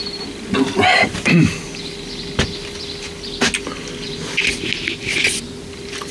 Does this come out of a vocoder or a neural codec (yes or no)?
no